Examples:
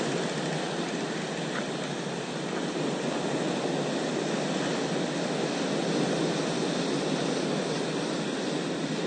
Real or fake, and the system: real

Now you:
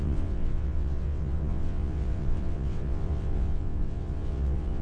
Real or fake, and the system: fake, vocoder, WaveNeXt